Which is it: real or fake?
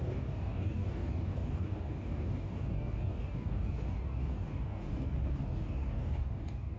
fake